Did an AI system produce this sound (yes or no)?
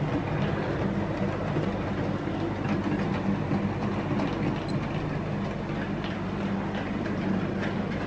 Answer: no